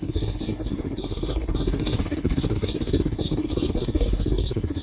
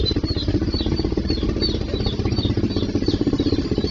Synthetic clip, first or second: first